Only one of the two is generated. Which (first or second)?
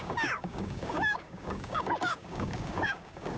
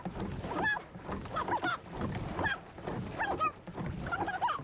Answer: first